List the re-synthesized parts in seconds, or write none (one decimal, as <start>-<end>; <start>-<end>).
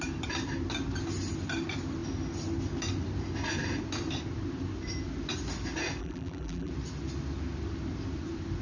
6.0-6.7